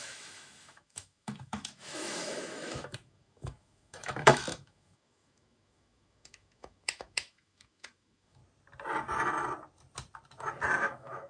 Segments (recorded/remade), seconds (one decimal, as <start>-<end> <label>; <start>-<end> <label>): 0.0-8.4 remade; 8.4-10.8 recorded; 10.8-11.3 remade